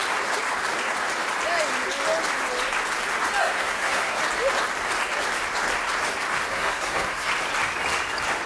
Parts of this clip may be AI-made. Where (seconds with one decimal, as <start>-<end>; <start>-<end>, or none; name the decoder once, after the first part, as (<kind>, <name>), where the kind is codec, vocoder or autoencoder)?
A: 3.4-4.2 (codec, SNAC); 6.5-7.3